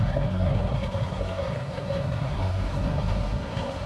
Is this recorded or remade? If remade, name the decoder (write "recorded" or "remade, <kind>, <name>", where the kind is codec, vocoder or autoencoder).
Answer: remade, codec, SNAC